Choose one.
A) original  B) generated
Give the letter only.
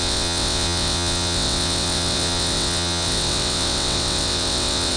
B